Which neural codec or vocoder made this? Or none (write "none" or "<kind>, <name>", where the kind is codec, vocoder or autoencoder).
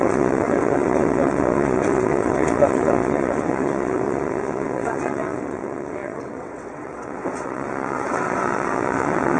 vocoder, WaveNeXt